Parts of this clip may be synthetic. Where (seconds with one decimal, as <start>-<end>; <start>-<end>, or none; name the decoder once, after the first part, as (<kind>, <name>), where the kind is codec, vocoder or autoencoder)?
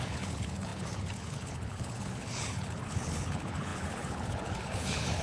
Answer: 0.0-5.2 (codec, HILCodec)